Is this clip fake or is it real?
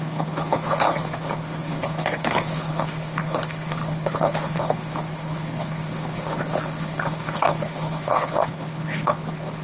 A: fake